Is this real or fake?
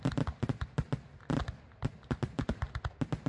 real